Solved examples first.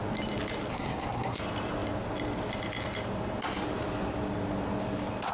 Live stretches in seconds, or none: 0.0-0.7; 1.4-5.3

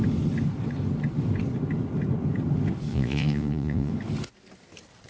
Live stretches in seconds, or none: 0.0-2.9; 3.9-5.1

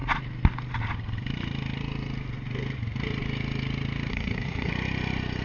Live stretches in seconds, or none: 0.0-4.1; 4.7-5.4

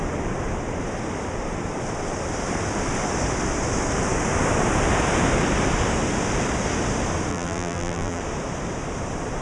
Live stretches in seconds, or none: 0.0-7.3; 8.2-9.4